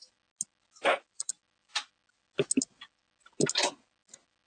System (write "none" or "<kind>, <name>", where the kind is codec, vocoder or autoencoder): none